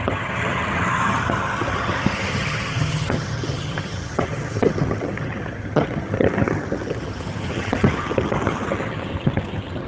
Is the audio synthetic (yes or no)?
yes